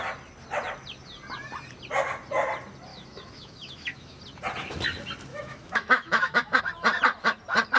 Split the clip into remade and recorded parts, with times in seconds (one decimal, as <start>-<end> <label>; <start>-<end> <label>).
0.0-2.9 recorded; 2.9-4.2 remade; 4.2-5.3 recorded; 5.3-6.6 remade; 6.6-7.8 recorded